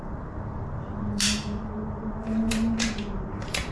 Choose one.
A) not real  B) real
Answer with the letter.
A